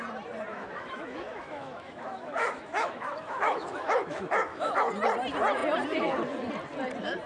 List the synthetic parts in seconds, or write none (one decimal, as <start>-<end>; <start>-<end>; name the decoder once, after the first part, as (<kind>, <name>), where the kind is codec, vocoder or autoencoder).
0.5-4.9 (autoencoder, DAC-VAE)